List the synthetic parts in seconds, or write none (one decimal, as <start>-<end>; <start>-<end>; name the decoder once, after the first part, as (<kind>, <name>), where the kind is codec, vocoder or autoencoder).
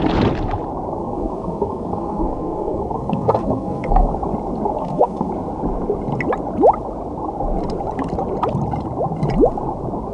1.0-4.1 (codec, SNAC); 4.8-5.3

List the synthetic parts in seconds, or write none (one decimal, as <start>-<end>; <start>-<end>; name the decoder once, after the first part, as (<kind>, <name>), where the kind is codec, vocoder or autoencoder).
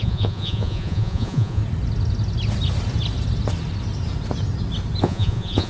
0.0-1.6 (vocoder, Vocos); 5.0-5.7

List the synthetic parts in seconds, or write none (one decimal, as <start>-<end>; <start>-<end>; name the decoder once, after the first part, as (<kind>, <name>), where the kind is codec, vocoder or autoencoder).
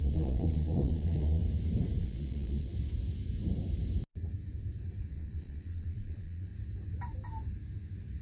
0.0-1.4 (vocoder, Vocos); 2.0-2.7; 5.1-6.5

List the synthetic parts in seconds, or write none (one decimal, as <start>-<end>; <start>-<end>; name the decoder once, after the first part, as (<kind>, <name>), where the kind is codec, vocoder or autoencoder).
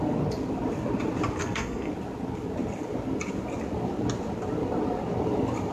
1.4-1.9 (codec, SNAC)